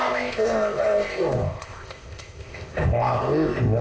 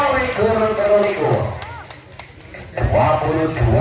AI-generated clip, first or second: first